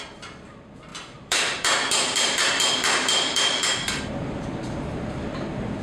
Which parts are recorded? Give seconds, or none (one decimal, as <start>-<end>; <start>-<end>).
0.0-0.9; 4.4-5.8